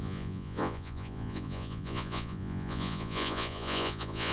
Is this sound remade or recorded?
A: remade